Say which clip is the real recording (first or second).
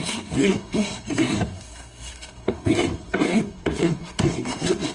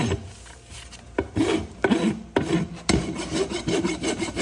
second